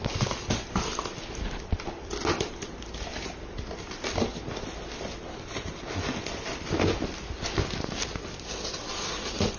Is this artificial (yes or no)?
no